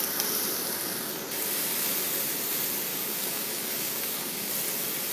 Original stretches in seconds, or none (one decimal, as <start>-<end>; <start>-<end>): 0.0-2.9; 4.5-5.1